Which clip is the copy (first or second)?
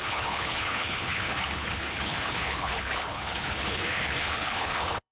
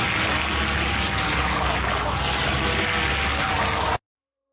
first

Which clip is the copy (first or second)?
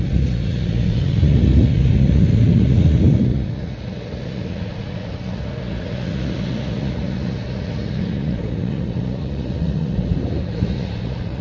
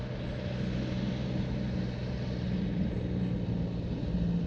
first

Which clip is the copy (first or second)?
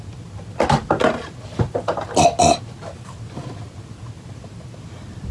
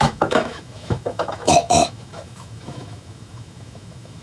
second